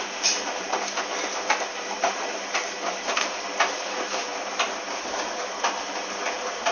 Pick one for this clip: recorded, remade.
remade